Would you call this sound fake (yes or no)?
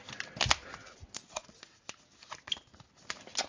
no